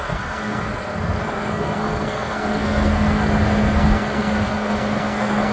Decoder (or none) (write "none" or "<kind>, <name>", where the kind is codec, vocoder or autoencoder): codec, SNAC